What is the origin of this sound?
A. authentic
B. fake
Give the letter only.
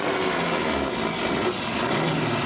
A